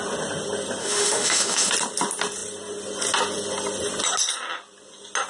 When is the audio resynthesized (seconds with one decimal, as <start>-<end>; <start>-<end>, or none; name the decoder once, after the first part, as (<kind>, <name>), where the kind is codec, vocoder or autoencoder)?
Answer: 0.8-1.7 (autoencoder, DAC-VAE)